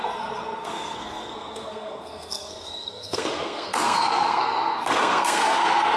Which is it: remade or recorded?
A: remade